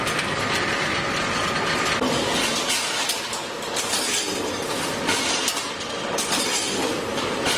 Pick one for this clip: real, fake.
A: real